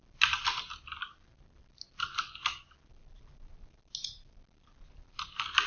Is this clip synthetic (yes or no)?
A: no